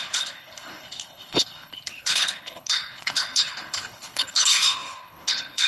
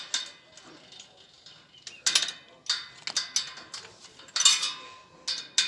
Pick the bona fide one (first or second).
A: second